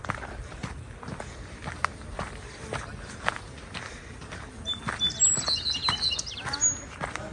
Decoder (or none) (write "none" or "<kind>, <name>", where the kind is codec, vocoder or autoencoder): none